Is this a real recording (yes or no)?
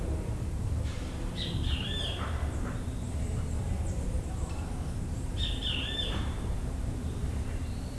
no